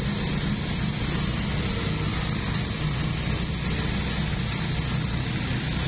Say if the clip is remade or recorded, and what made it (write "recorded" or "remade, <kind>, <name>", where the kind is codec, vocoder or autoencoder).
recorded